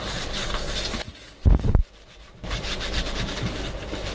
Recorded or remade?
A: recorded